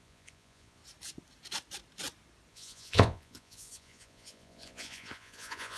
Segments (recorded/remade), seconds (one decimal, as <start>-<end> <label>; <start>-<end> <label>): 0.0-0.8 remade; 0.8-2.5 recorded; 2.5-5.8 remade